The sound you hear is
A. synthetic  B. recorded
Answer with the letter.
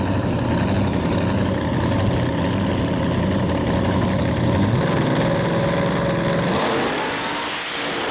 B